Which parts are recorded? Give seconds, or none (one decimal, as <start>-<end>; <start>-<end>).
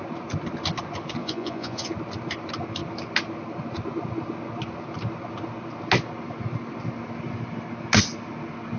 0.0-1.2; 1.9-8.8